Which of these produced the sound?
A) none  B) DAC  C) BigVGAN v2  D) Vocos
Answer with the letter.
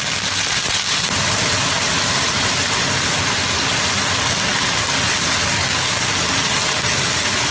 A